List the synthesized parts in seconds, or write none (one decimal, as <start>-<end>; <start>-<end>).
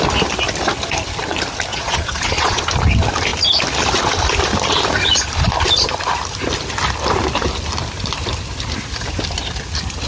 1.7-2.6